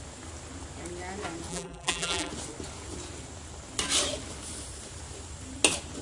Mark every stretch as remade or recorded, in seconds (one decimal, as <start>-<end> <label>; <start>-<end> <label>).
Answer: 0.0-1.5 recorded; 1.5-2.3 remade; 2.3-6.0 recorded